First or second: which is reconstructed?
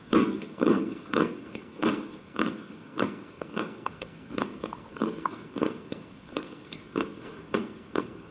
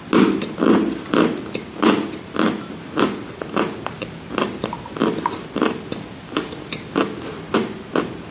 first